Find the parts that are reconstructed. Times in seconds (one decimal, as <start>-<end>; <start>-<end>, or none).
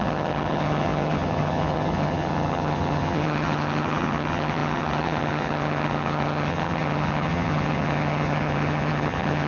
0.0-9.5